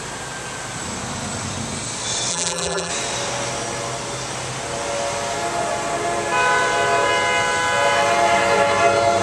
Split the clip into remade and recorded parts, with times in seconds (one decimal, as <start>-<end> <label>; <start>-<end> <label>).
0.0-2.3 recorded; 2.3-2.9 remade; 2.9-9.2 recorded